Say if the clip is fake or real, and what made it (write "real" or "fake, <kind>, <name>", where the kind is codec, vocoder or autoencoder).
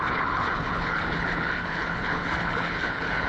fake, codec, HILCodec